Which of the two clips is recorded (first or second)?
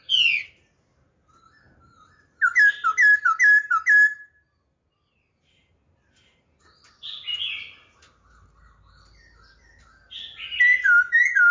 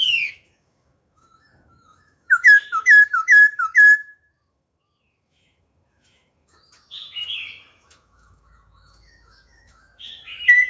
first